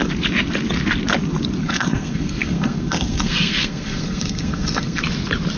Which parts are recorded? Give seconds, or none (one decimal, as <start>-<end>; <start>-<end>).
0.0-1.6; 5.0-5.6